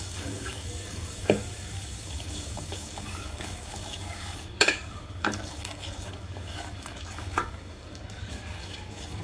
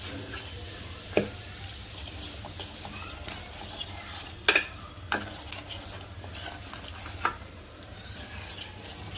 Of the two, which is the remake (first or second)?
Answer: first